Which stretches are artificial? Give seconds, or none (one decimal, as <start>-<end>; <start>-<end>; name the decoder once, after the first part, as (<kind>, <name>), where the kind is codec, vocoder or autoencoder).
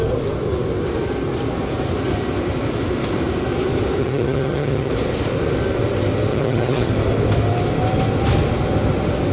4.0-4.9 (vocoder, HiFi-GAN); 6.3-6.9